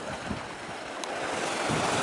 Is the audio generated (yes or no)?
no